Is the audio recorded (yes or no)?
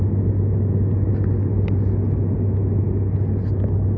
yes